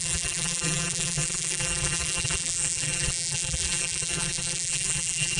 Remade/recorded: remade